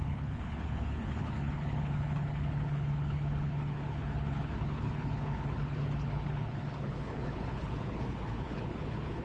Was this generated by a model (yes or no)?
yes